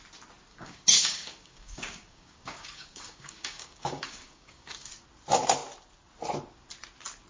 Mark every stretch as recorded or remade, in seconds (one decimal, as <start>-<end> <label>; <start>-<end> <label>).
0.0-0.5 recorded; 0.5-4.9 remade; 4.9-7.3 recorded